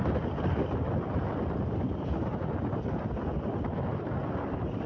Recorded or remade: recorded